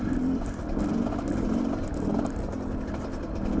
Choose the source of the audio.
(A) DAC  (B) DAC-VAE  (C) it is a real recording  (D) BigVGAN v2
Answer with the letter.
C